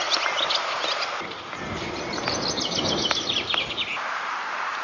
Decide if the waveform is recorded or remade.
recorded